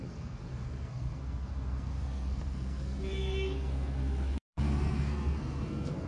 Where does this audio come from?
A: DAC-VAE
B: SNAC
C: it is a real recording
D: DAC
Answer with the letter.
B